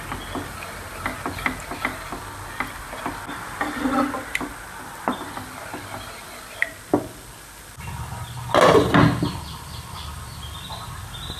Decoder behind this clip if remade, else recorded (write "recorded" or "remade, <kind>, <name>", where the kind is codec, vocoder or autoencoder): recorded